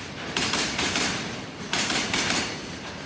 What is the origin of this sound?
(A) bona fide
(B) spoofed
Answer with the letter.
B